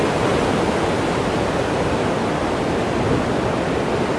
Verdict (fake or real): real